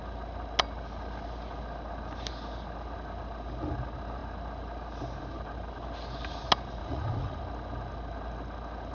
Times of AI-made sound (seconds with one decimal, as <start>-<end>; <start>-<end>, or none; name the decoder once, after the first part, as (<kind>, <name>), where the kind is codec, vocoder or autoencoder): 6.8-7.4 (vocoder, Vocos)